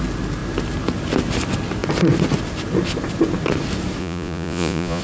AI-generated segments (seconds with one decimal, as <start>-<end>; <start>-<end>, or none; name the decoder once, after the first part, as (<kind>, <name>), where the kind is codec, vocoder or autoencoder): 4.0-5.0 (vocoder, Vocos)